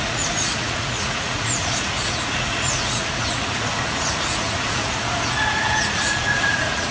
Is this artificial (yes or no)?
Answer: yes